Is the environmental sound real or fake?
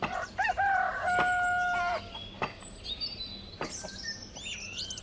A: real